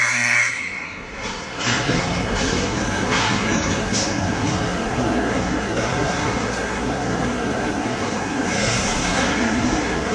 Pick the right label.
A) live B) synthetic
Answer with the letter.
B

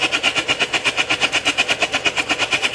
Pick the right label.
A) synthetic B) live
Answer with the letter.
B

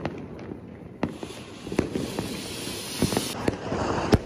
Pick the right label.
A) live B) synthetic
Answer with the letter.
A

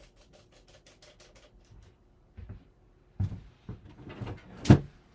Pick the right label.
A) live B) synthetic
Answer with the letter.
A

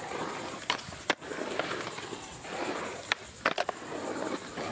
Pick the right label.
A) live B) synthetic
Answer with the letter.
A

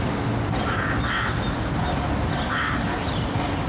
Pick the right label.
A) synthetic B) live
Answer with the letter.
B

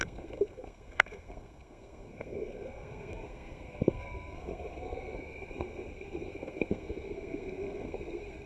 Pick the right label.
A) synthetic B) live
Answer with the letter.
A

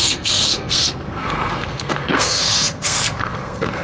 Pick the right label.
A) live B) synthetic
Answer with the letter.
B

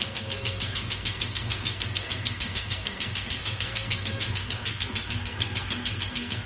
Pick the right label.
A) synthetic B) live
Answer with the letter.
A